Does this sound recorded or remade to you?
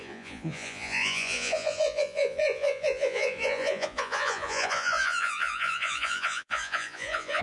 remade